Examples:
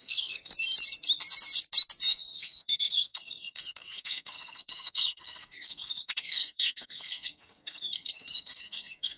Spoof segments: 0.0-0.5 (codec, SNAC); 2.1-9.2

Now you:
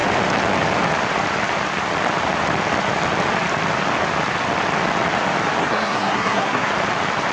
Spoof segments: 5.6-6.7 (codec, SNAC)

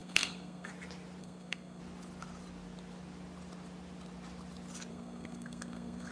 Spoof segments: 0.0-0.7 (codec, SNAC); 1.2-1.8; 4.9-6.1

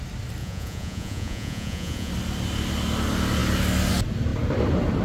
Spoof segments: 0.4-2.1 (vocoder, Vocos)

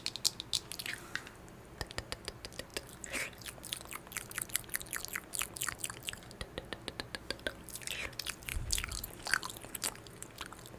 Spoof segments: none